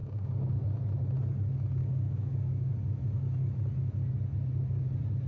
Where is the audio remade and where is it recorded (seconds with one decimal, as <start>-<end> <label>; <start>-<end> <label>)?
0.0-0.6 remade; 0.6-1.8 recorded; 1.8-2.7 remade; 2.7-5.3 recorded